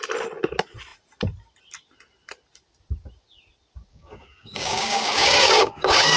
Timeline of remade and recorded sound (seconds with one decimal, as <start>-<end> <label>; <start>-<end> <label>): 0.0-3.9 recorded; 3.9-6.2 remade